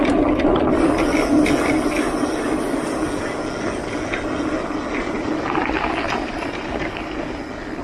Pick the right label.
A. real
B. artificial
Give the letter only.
A